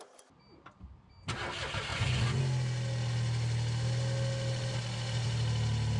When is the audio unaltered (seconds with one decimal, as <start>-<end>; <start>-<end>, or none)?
0.0-1.9; 2.4-6.0

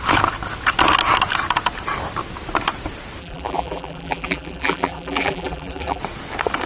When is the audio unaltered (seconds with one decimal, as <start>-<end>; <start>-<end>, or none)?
0.0-3.2; 6.0-6.7

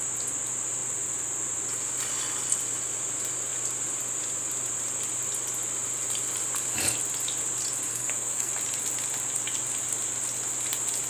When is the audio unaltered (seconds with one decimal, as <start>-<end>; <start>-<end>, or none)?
0.0-7.9; 8.5-11.1

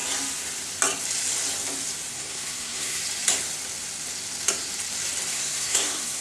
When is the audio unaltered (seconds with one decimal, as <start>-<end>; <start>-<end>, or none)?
0.0-2.1; 3.0-5.3

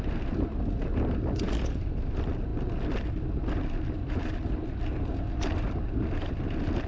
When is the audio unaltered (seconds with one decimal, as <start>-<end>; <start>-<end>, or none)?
0.0-6.9

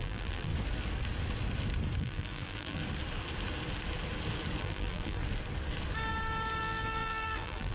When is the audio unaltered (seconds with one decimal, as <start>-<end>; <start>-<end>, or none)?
0.5-2.0; 2.8-4.6; 5.2-6.6

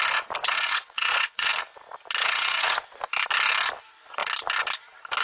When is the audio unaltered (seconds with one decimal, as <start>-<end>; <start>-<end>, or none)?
0.0-0.4; 1.5-2.2; 3.0-5.2

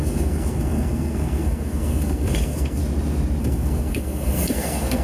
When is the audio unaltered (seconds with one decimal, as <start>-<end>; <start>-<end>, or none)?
2.8-3.4